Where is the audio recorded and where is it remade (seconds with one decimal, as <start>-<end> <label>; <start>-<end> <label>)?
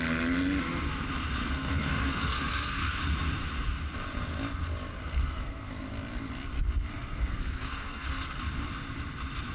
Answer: 0.0-1.4 recorded; 1.4-3.0 remade; 3.0-4.9 recorded; 4.9-5.7 remade; 5.7-6.9 recorded; 6.9-8.4 remade; 8.4-9.5 recorded